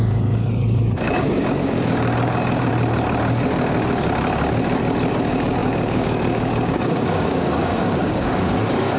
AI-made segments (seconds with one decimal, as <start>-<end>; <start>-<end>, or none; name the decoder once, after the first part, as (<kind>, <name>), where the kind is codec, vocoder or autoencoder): 0.0-2.7 (codec, DAC); 5.1-9.0

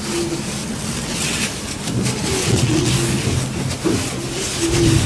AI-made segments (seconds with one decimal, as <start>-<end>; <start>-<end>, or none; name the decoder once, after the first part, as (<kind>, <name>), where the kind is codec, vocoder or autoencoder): 0.6-1.4 (vocoder, WaveNeXt); 2.4-2.9

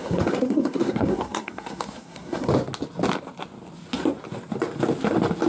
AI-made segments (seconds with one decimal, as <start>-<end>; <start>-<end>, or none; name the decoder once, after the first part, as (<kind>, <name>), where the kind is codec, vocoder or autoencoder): 0.0-2.5 (codec, SNAC)